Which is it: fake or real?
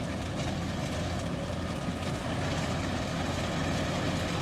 real